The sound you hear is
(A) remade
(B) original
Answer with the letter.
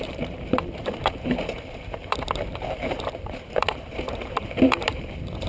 A